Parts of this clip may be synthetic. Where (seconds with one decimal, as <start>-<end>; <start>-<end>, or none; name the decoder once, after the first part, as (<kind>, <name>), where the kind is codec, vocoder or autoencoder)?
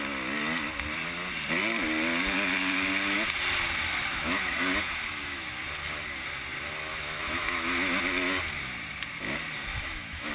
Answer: 4.1-5.6 (autoencoder, DAC-VAE); 6.9-8.0; 9.7-10.3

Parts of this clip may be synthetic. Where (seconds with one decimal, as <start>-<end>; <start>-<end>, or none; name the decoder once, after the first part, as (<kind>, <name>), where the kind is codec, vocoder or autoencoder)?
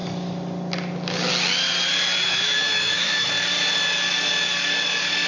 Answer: 2.2-3.3 (autoencoder, DAC-VAE)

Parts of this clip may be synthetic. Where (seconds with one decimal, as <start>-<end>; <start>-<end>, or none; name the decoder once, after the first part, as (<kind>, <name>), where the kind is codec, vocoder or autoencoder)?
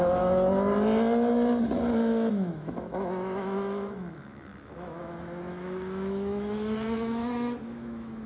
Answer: 0.0-0.7 (autoencoder, DAC-VAE); 2.3-8.3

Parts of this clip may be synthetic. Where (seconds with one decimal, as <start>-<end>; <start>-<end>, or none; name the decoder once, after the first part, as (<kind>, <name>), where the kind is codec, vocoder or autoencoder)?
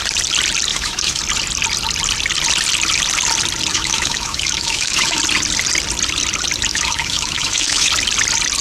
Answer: 0.7-1.2 (autoencoder, DAC-VAE); 3.7-5.2; 6.7-7.9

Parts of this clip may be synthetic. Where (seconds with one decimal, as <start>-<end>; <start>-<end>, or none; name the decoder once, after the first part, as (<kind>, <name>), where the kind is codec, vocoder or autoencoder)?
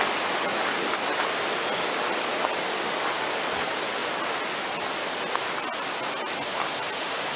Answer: none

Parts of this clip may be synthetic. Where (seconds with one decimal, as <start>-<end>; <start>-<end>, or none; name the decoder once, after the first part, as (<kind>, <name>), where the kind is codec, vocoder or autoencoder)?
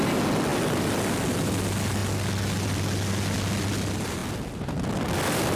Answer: none